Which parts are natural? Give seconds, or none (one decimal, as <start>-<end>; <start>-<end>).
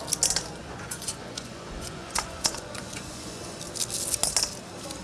0.0-0.6; 3.6-5.0